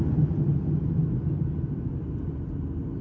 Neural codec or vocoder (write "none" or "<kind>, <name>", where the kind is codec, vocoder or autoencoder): none